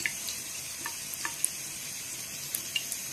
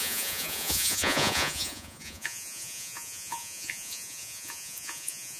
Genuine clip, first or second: first